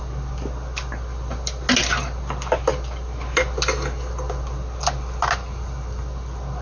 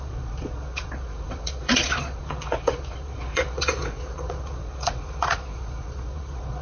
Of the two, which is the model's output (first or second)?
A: second